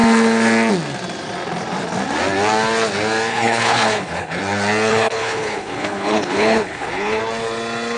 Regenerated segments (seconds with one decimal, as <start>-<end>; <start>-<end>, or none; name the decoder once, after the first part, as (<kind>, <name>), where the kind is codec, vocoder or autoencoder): 3.3-4.4 (codec, HILCodec); 4.9-7.2